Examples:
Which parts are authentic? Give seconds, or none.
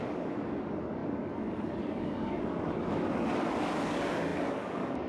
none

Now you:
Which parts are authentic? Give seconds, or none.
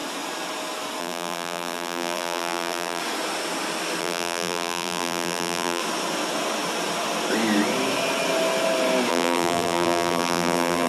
0.0-1.0; 3.0-4.0; 5.8-9.1